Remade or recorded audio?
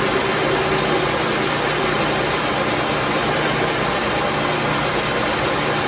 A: recorded